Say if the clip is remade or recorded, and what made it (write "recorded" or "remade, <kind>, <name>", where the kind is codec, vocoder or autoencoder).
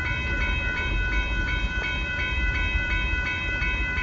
remade, vocoder, BigVGAN v2